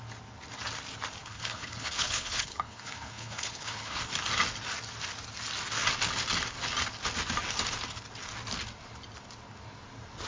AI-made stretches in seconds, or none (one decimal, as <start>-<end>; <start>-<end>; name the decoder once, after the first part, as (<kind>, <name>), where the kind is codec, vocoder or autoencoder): 1.2-4.0 (codec, HILCodec)